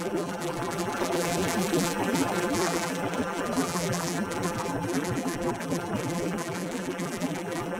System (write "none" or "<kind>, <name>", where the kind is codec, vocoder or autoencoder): vocoder, BigVGAN v2